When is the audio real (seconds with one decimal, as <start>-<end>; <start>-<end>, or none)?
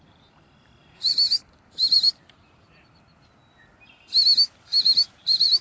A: 0.0-0.8; 3.0-4.7